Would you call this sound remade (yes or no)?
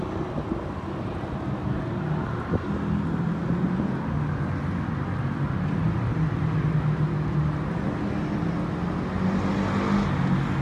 no